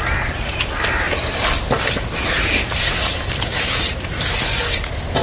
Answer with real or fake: real